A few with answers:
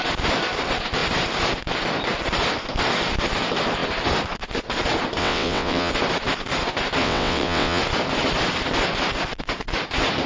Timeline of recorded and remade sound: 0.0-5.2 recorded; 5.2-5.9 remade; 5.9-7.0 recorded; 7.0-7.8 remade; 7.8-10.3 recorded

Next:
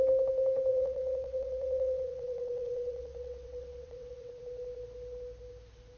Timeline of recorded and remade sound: 0.0-0.7 recorded; 0.7-4.3 remade; 4.3-6.0 recorded

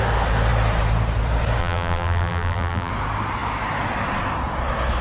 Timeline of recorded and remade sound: 0.0-1.6 recorded; 1.6-2.9 remade; 2.9-5.0 recorded